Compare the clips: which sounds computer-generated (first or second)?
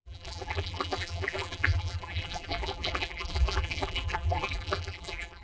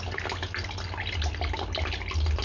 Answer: first